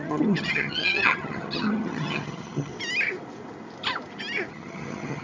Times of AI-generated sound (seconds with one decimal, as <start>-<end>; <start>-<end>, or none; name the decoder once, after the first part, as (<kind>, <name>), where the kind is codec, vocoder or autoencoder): 0.0-2.7 (vocoder, HiFi-GAN); 4.5-5.2